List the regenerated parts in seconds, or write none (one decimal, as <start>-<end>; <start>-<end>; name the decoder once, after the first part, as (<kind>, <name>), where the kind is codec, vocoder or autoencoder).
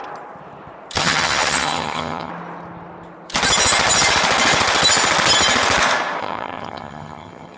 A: 1.0-2.3 (vocoder, HiFi-GAN); 6.2-7.6